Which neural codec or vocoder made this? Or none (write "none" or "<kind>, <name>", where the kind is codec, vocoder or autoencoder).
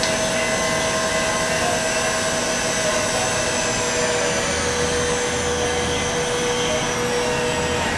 none